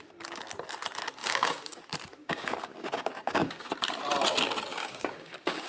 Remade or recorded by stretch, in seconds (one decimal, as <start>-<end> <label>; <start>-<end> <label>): 0.0-1.2 recorded; 1.2-1.8 remade; 1.8-2.2 recorded; 2.2-3.7 remade; 3.7-4.7 recorded; 4.7-5.7 remade